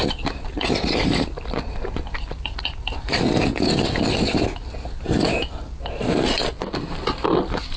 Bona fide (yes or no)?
yes